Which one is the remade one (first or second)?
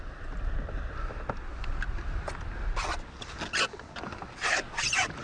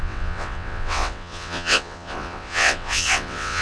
second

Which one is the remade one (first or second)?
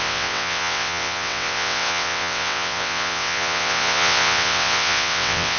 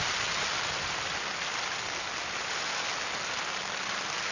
first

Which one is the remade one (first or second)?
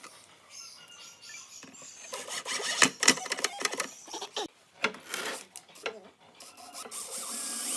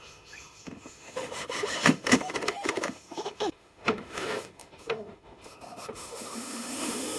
second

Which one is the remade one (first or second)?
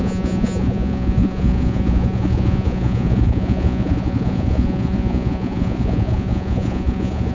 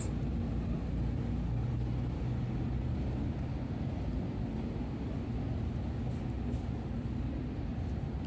first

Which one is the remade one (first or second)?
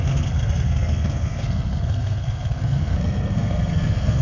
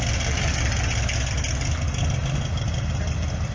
first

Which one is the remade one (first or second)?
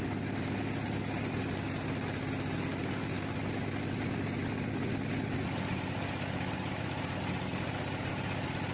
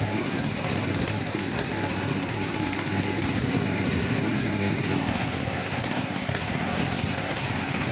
second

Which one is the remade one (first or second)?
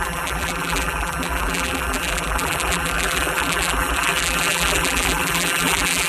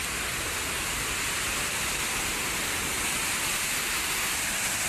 first